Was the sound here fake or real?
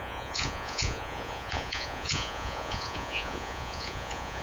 fake